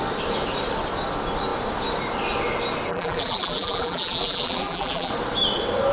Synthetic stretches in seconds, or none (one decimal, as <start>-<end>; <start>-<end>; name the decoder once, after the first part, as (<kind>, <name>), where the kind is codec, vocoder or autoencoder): 2.9-5.1 (vocoder, BigVGAN v2)